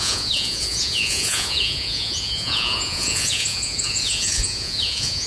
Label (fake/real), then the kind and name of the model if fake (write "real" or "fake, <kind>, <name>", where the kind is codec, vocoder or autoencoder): fake, vocoder, Vocos